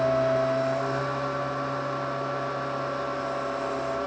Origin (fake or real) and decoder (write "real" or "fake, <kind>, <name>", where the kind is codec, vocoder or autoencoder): real